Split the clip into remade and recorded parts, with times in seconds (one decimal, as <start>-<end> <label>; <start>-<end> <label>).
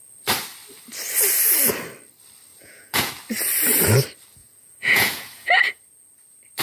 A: 0.0-2.5 recorded; 2.5-3.1 remade; 3.1-4.4 recorded; 4.4-5.8 remade; 5.8-6.6 recorded